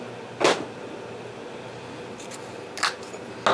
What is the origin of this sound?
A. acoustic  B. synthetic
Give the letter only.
A